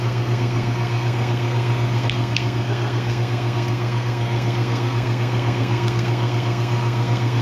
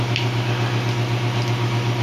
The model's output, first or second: first